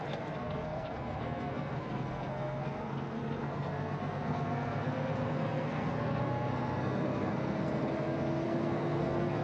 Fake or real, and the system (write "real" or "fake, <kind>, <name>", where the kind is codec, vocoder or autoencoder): fake, codec, SNAC